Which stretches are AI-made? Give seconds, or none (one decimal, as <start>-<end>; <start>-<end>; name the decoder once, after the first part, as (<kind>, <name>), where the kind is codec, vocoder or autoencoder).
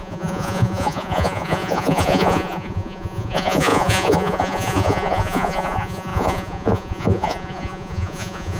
0.0-8.6 (vocoder, Vocos)